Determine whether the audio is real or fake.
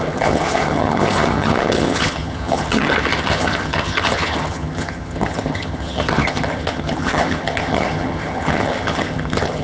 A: fake